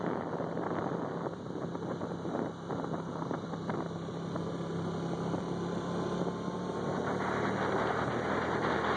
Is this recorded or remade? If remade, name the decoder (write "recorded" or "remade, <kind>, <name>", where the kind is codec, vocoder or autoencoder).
recorded